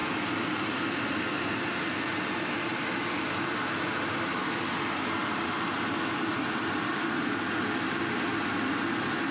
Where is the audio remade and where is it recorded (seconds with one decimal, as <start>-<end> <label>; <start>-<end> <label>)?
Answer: 0.0-6.9 recorded; 6.9-7.4 remade; 7.4-9.3 recorded

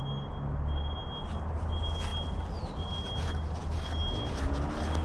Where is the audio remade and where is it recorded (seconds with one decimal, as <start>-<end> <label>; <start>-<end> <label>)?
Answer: 0.0-5.0 recorded

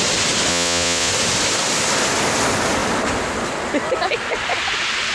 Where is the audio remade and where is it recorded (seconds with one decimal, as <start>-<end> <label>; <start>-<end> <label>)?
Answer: 0.0-0.5 recorded; 0.5-1.1 remade; 1.1-5.1 recorded

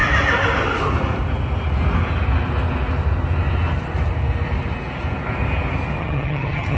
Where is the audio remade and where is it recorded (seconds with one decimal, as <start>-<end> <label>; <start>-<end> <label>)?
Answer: 0.0-6.0 recorded; 6.0-6.8 remade

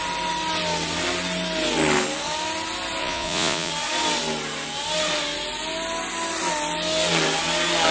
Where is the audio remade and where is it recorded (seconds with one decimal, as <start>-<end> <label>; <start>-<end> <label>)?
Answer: 0.0-3.0 recorded; 3.0-3.7 remade; 3.7-7.9 recorded